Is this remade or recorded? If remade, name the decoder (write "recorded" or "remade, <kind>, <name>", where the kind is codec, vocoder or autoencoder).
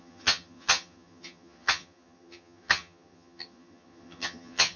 remade, vocoder, HiFi-GAN